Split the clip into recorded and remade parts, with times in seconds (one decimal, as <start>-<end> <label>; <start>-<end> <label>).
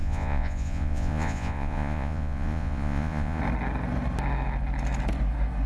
0.0-3.4 remade; 3.4-5.7 recorded